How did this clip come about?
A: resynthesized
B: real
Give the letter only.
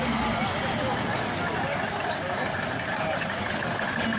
B